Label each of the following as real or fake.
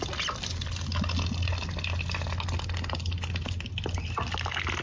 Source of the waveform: real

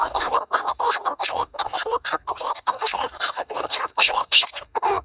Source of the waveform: fake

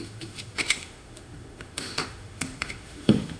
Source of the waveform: fake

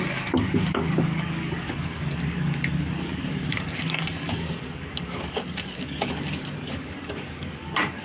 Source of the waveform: fake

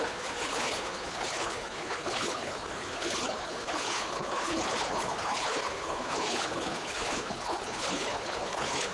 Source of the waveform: fake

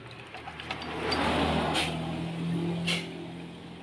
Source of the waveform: real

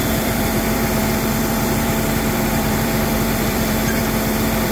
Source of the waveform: fake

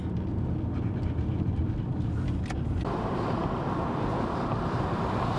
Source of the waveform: real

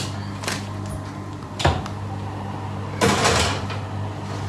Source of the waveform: real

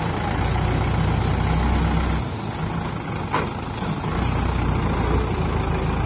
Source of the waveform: real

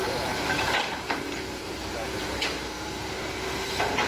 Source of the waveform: fake